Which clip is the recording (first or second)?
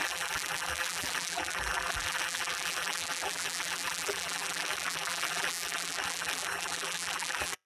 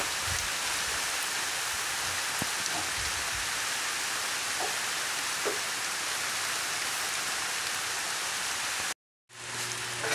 second